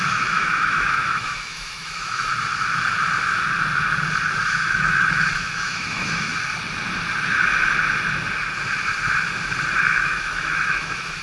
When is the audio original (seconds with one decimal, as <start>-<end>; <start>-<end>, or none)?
2.3-4.5; 6.3-9.8

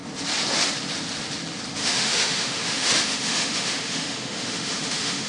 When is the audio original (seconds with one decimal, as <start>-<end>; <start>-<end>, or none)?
0.0-1.8

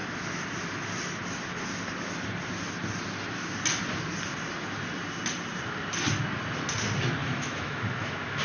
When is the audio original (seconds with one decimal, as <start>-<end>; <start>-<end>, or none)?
0.0-7.2

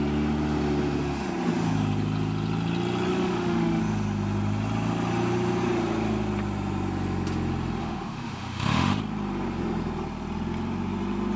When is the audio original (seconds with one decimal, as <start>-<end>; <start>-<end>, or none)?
0.0-3.1; 3.8-7.8; 9.0-11.4

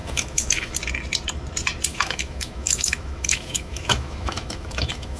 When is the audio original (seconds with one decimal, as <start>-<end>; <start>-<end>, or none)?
0.7-1.9

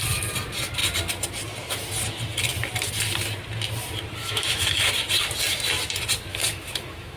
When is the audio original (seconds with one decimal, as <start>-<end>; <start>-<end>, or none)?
0.0-4.2; 4.9-6.3

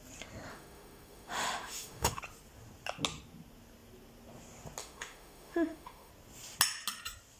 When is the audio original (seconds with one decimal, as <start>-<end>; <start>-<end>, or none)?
0.0-0.5; 2.2-4.8; 6.1-7.4

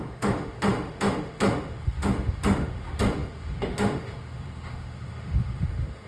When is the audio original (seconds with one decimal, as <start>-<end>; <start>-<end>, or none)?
none